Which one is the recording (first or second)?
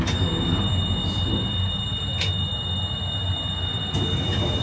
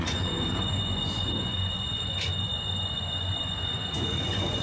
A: first